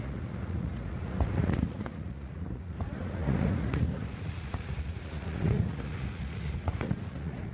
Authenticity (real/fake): fake